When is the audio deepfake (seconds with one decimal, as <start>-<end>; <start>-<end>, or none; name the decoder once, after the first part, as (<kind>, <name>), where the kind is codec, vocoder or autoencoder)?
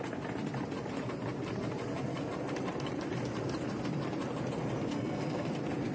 4.9-5.5 (codec, SNAC)